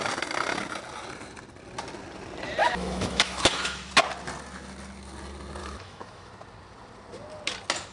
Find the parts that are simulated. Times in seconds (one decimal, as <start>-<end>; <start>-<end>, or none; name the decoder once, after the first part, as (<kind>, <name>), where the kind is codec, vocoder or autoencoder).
2.6-3.9 (autoencoder, DAC-VAE); 5.6-6.3